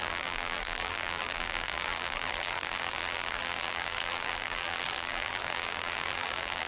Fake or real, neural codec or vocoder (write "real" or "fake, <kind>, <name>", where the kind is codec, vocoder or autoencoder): fake, vocoder, BigVGAN v2